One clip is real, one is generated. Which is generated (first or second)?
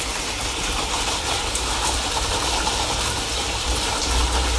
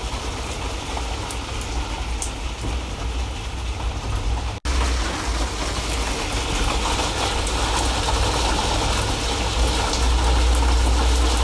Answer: first